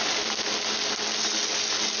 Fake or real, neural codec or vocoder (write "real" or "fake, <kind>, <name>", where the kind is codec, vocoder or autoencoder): real